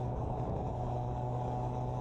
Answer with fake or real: fake